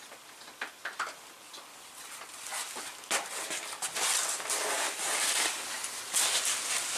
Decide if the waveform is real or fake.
real